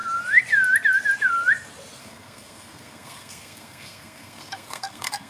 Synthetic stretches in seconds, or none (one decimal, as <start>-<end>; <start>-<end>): 2.0-5.3